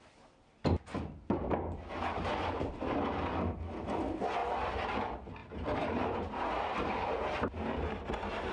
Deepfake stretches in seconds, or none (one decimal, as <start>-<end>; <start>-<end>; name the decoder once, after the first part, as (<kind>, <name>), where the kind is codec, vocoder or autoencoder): 4.4-5.0 (vocoder, BigVGAN v2); 5.4-7.1